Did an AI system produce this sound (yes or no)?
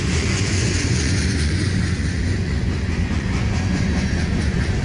yes